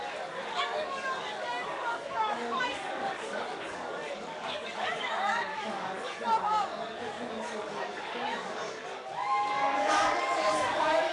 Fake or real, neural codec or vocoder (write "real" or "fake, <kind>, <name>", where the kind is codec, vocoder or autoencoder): fake, codec, DAC